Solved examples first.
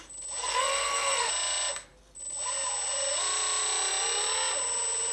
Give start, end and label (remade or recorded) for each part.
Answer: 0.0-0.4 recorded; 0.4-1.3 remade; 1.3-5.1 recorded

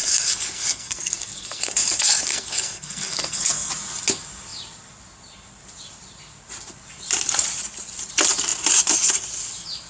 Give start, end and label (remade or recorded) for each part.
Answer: 0.0-3.7 remade; 3.7-9.9 recorded